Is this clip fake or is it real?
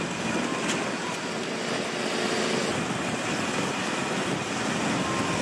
real